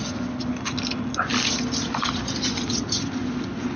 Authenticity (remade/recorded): recorded